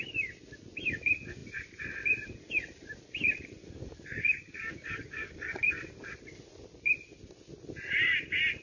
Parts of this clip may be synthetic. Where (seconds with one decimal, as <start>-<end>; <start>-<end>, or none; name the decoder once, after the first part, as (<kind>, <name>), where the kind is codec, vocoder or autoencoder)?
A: 3.6-5.7 (codec, DAC)